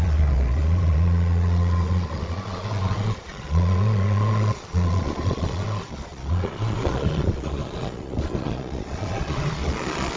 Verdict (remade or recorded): remade